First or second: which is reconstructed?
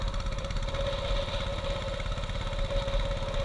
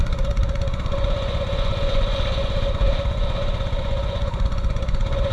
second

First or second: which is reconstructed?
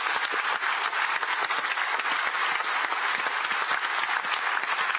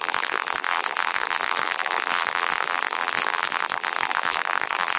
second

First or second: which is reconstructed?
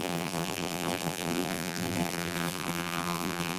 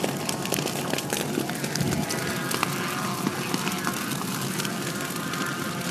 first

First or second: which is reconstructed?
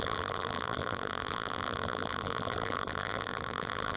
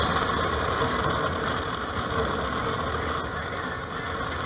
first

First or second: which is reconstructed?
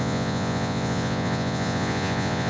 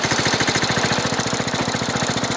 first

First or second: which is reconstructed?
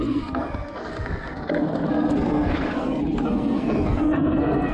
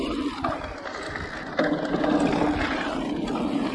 first